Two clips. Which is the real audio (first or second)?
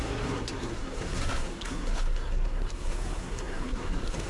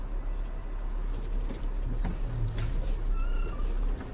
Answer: second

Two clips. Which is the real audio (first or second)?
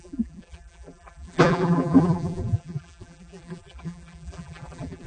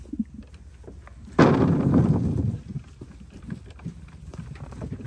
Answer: second